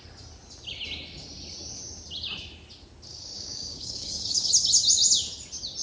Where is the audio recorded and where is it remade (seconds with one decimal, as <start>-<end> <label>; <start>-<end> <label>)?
0.0-3.1 recorded; 3.1-4.5 remade; 4.5-5.8 recorded